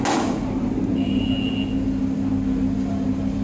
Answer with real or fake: real